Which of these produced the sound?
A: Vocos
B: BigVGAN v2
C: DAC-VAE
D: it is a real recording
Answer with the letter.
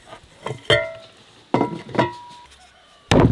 D